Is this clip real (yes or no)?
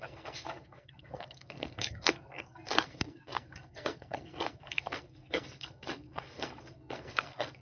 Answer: no